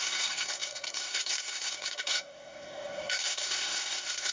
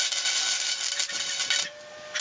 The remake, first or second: first